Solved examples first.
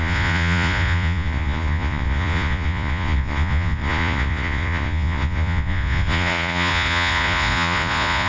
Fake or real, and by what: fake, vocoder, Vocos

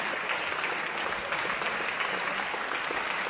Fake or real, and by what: real